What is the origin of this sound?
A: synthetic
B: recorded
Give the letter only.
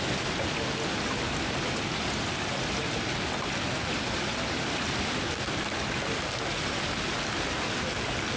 B